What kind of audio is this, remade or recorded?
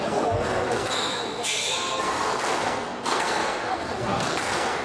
remade